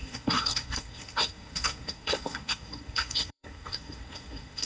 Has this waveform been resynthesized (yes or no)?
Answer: yes